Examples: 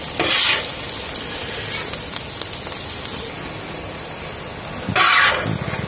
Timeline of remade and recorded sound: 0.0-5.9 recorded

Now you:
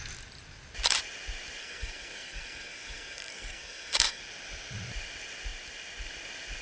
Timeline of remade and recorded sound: 0.0-1.6 recorded; 1.6-4.2 remade; 4.2-6.6 recorded

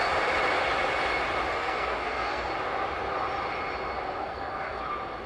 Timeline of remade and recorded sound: 0.0-1.5 recorded; 1.5-2.5 remade; 2.5-4.2 recorded; 4.2-4.8 remade; 4.8-5.3 recorded

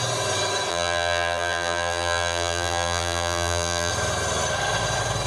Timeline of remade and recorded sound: 0.0-0.7 recorded; 0.7-3.9 remade; 3.9-5.3 recorded

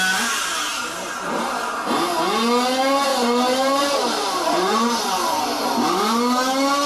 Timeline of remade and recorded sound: 0.0-0.7 recorded; 0.7-1.6 remade; 1.6-3.1 recorded; 3.1-5.0 remade; 5.0-6.9 recorded

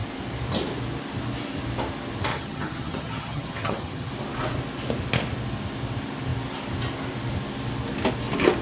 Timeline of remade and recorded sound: 0.0-2.3 recorded; 2.3-4.1 remade; 4.1-8.6 recorded